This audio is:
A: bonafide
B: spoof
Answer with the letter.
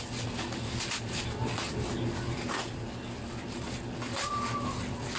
A